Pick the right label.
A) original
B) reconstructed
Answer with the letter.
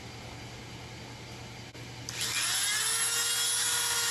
A